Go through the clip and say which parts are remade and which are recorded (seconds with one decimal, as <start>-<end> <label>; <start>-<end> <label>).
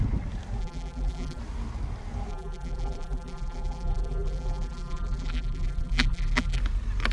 0.0-0.6 recorded; 0.6-1.4 remade; 1.4-2.3 recorded; 2.3-6.6 remade; 6.6-7.1 recorded